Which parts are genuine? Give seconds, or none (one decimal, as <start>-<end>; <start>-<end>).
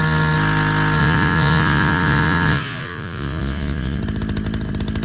0.0-1.0; 4.0-5.0